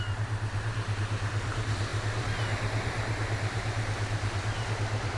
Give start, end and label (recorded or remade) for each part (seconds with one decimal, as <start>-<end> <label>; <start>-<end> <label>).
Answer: 0.0-5.2 remade